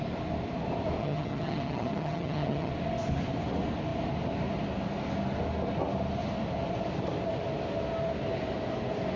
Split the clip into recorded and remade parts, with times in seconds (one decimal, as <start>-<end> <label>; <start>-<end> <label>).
0.0-1.0 recorded; 1.0-2.7 remade; 2.7-9.2 recorded